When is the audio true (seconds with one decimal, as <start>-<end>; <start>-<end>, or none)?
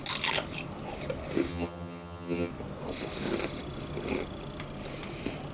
0.0-1.5; 2.5-5.5